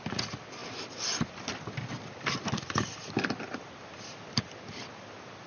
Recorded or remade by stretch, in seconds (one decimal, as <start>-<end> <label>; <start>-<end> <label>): 0.0-5.5 recorded